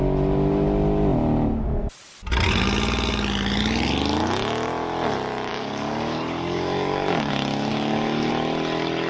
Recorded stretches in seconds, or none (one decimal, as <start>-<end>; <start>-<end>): 0.0-5.5; 7.3-7.7; 8.3-9.1